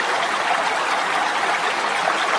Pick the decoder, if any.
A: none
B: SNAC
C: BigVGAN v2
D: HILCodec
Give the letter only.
A